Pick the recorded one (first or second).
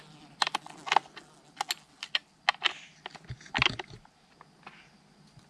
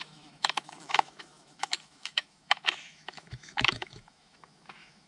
first